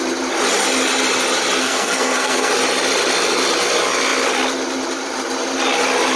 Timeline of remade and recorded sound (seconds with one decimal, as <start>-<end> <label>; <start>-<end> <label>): 0.0-1.6 recorded; 1.6-2.5 remade; 2.5-6.2 recorded